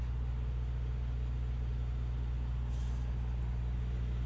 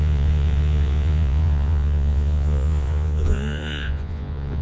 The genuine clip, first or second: first